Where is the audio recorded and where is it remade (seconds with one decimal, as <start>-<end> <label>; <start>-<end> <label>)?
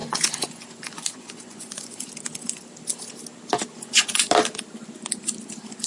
0.0-2.1 remade; 2.1-3.7 recorded; 3.7-4.3 remade; 4.3-5.9 recorded